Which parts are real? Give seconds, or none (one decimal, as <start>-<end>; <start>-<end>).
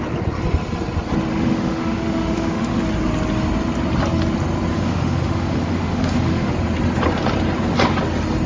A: 0.0-1.3; 2.8-4.7; 6.5-8.5